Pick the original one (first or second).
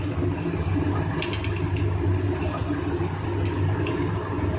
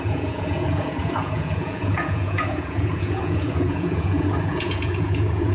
first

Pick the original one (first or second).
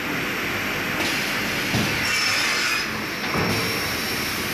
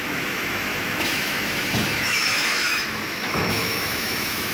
first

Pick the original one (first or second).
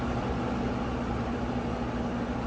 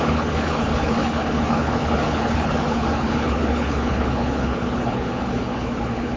first